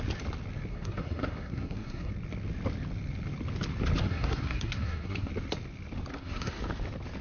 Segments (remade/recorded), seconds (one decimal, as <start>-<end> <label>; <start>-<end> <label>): 0.0-0.7 recorded; 0.7-2.1 remade; 2.1-4.0 recorded; 4.0-5.3 remade; 5.3-6.1 recorded; 6.1-6.6 remade; 6.6-7.2 recorded